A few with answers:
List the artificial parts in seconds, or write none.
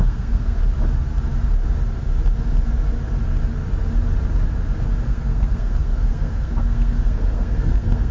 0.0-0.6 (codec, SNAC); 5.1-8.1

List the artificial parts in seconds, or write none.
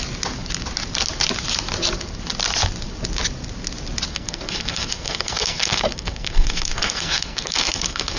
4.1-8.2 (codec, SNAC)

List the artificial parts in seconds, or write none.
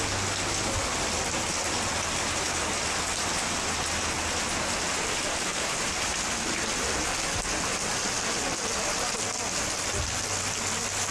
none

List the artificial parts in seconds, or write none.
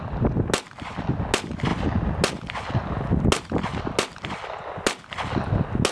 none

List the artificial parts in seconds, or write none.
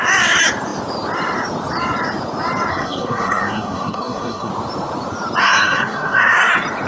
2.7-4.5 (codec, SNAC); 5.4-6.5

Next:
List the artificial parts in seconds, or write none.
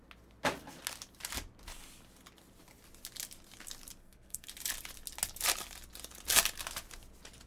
4.0-4.5 (codec, SNAC)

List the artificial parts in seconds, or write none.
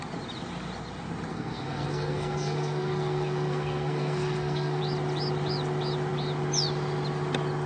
1.3-4.8 (codec, SNAC)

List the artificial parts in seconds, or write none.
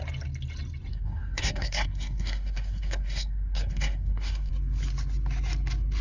0.9-4.5 (codec, SNAC)